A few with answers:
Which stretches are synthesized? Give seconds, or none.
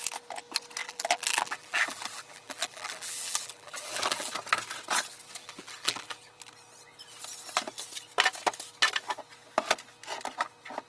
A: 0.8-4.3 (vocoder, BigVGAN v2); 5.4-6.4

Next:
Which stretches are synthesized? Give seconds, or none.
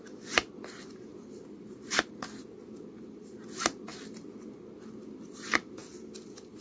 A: 1.1-2.2 (vocoder, BigVGAN v2); 3.9-4.6